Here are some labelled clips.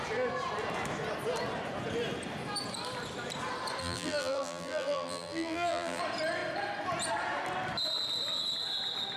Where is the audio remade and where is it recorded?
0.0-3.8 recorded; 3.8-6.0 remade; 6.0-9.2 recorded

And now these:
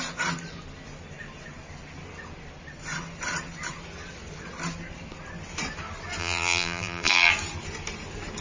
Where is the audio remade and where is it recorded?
0.0-6.2 recorded; 6.2-7.3 remade; 7.3-8.4 recorded

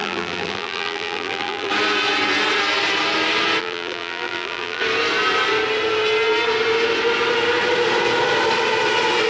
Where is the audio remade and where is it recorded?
0.0-1.7 remade; 1.7-3.6 recorded; 3.6-4.8 remade; 4.8-9.3 recorded

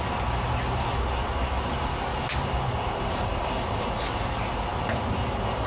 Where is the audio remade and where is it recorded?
0.0-5.7 recorded

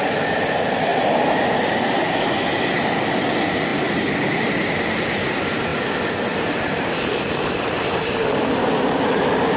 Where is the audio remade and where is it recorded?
0.0-0.9 recorded; 0.9-1.7 remade; 1.7-9.6 recorded

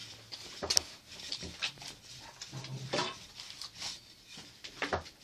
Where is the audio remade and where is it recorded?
0.0-1.4 recorded; 1.4-3.0 remade; 3.0-4.7 recorded; 4.7-5.2 remade

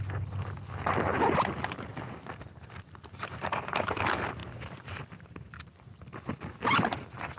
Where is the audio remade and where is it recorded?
0.0-1.9 recorded; 1.9-4.0 remade; 4.0-4.4 recorded; 4.4-6.0 remade; 6.0-7.4 recorded

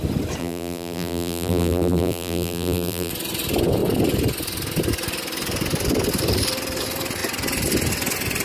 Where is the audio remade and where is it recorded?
0.0-0.4 recorded; 0.4-3.1 remade; 3.1-8.4 recorded